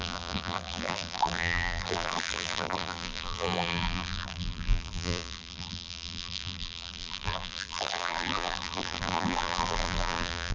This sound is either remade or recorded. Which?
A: remade